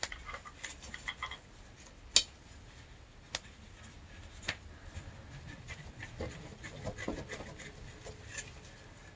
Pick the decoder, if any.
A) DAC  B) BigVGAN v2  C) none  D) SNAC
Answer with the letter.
C